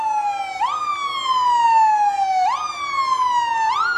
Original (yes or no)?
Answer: yes